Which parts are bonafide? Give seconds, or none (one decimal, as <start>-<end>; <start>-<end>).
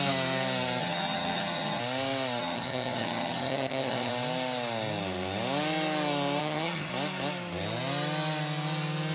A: 0.0-0.8; 1.8-2.4; 4.1-6.4; 6.9-9.1